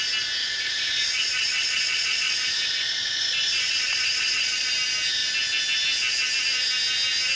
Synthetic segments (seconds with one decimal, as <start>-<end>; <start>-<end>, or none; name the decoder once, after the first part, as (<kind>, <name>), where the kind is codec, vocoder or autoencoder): 0.4-4.7 (vocoder, Vocos)